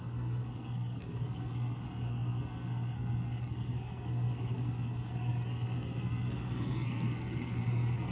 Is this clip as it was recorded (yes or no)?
no